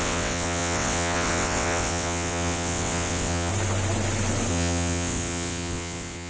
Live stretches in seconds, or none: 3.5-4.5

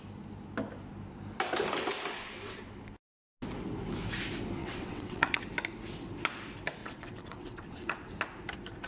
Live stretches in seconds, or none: 0.0-4.6; 5.4-6.8; 8.1-8.9